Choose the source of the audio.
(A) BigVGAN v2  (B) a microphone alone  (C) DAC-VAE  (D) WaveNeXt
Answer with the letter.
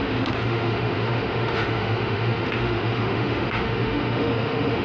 C